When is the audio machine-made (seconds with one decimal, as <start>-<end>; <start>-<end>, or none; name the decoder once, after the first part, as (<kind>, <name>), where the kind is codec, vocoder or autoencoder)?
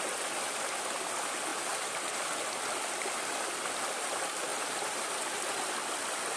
4.5-5.1 (vocoder, BigVGAN v2)